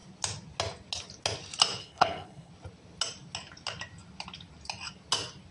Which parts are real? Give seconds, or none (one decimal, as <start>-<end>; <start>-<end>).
0.0-1.8; 2.5-5.5